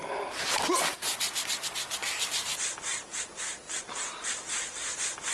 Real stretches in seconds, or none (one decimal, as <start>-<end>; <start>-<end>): 0.0-5.3